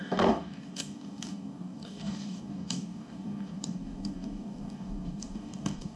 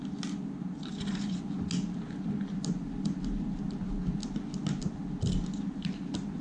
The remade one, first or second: first